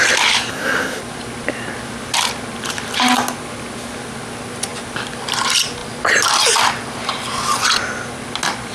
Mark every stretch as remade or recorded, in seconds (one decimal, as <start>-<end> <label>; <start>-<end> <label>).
0.0-0.5 recorded; 0.5-1.0 remade; 1.0-8.7 recorded